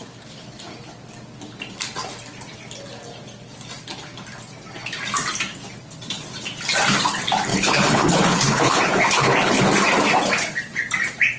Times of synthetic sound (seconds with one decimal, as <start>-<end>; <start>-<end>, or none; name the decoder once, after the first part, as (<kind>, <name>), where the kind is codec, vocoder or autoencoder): 7.5-9.6 (codec, HILCodec)